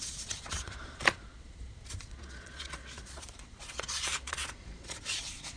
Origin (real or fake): fake